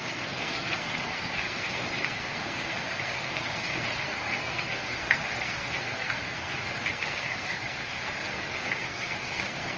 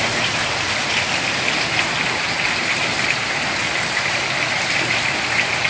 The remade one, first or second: first